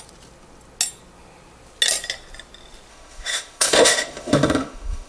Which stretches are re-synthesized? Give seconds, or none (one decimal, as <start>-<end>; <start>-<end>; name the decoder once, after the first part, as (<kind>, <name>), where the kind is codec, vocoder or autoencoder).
2.9-5.1 (autoencoder, DAC-VAE)